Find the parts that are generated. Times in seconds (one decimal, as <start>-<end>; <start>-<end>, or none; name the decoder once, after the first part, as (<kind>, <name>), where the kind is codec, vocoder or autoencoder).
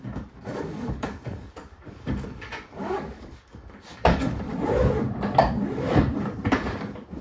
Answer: 0.0-4.5 (codec, DAC); 6.8-7.2